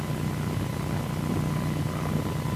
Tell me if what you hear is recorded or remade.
recorded